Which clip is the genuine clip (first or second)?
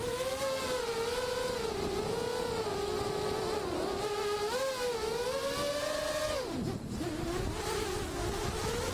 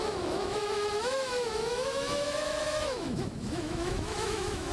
first